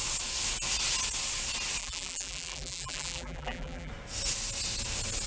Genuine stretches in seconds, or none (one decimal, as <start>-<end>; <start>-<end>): 0.0-1.8; 3.9-5.3